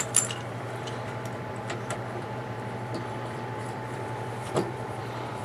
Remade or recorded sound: remade